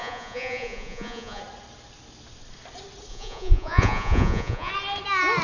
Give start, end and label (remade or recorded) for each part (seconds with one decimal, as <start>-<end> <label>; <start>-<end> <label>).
0.0-1.4 remade; 1.4-3.1 recorded; 3.1-4.7 remade; 4.7-5.4 recorded